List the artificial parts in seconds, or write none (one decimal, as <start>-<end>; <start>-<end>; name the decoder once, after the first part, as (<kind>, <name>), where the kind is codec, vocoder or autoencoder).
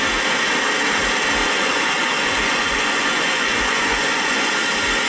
1.4-4.5 (vocoder, Vocos)